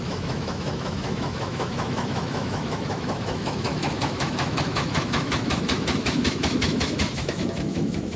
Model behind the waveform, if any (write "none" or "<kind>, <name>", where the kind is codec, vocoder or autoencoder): autoencoder, DAC-VAE